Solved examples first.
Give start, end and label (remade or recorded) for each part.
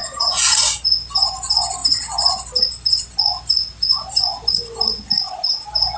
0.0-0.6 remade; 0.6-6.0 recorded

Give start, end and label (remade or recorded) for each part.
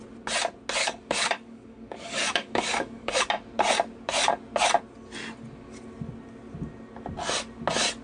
0.0-0.8 recorded; 0.8-3.2 remade; 3.2-8.0 recorded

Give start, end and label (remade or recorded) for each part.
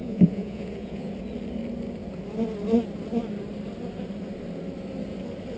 0.0-1.1 remade; 1.1-5.6 recorded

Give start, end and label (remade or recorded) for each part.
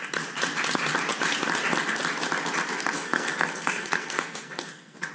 0.0-2.7 recorded; 2.7-5.1 remade